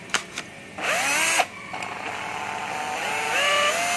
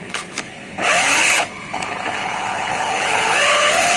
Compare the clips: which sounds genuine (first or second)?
first